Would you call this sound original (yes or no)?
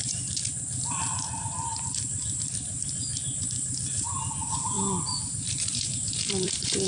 no